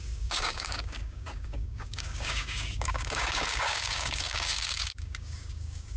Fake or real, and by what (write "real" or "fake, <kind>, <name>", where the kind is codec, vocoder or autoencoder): fake, codec, DAC